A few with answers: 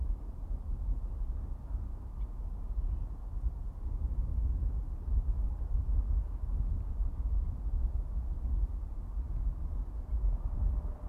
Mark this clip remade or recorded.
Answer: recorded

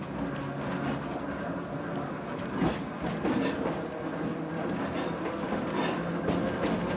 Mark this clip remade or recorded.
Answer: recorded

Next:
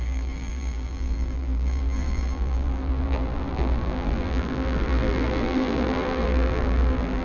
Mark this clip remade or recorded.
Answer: remade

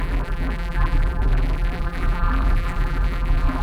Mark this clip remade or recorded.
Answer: remade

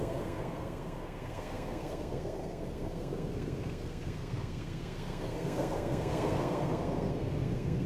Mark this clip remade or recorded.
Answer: remade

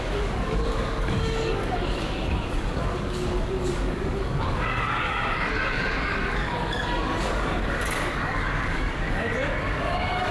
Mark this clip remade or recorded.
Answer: remade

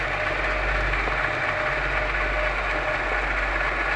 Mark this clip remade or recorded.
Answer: recorded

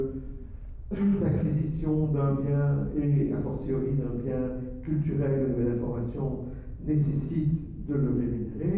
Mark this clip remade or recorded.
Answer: recorded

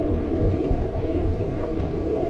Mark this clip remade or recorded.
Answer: remade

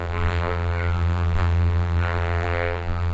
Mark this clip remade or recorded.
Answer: remade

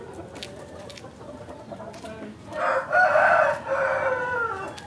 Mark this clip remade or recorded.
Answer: recorded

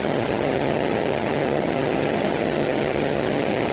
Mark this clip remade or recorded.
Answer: remade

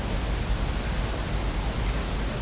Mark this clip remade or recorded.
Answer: recorded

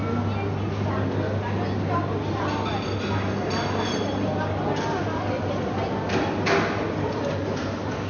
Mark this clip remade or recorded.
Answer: recorded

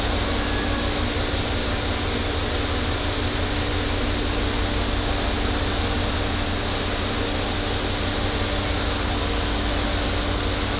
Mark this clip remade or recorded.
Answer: recorded